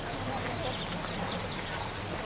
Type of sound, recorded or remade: recorded